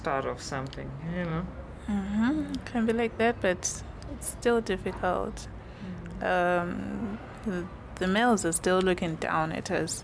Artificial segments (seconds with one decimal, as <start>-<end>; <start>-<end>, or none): none